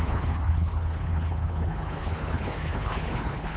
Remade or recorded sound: remade